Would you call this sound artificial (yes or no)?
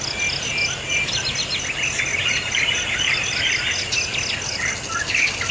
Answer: no